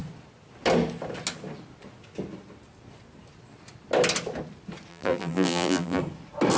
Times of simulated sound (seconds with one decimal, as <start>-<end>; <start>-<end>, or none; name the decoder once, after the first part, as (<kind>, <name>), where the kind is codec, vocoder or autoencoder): 4.9-6.0 (vocoder, BigVGAN v2)